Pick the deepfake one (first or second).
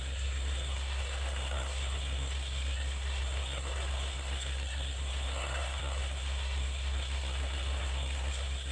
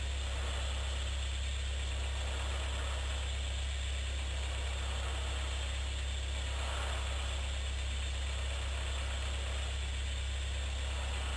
first